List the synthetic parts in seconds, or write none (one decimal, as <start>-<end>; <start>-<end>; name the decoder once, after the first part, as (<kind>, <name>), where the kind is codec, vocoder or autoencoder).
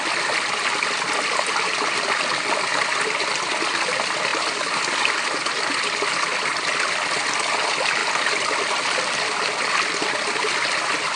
none